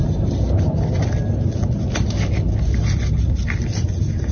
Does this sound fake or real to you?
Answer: real